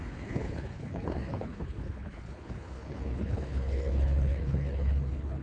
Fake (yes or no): yes